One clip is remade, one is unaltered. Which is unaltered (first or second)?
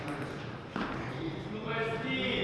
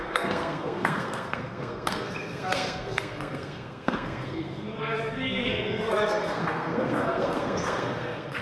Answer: first